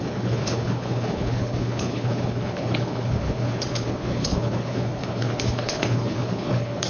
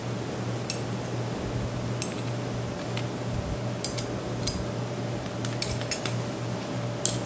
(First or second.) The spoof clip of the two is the first